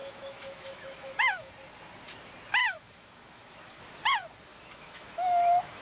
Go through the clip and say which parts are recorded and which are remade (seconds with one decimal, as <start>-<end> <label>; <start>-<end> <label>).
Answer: 0.0-1.5 remade; 1.5-2.6 recorded; 2.6-3.8 remade; 3.8-4.5 recorded; 4.5-5.8 remade